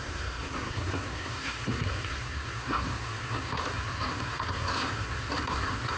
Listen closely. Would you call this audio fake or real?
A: fake